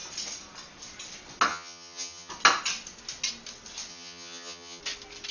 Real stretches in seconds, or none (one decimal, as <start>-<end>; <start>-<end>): 0.0-1.5; 2.3-3.9; 4.8-5.3